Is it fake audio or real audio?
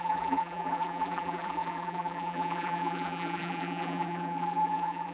fake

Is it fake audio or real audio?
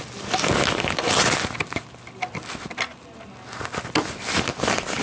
real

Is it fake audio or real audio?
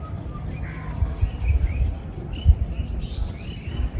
real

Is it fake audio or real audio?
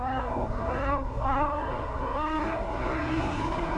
fake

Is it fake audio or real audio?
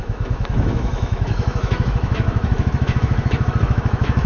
fake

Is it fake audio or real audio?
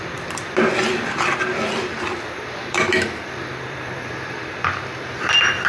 fake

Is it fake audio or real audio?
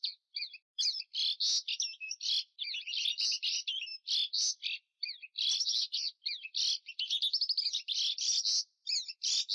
real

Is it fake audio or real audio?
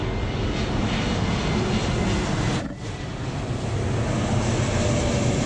real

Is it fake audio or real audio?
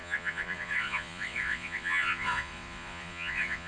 fake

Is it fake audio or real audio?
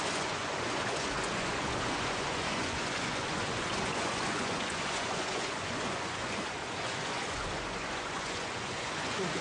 fake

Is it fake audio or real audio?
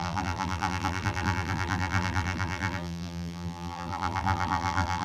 fake